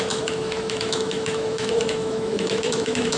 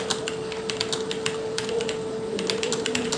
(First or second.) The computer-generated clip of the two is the first